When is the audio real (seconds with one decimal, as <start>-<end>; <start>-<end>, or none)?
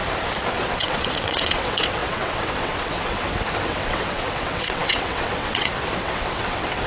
0.0-0.5